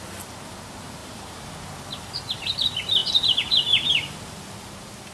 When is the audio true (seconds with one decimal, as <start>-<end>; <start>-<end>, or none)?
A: 0.0-1.0; 1.5-3.0; 4.2-5.1